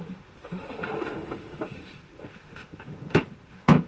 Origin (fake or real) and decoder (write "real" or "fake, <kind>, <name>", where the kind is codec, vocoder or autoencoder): fake, autoencoder, DAC-VAE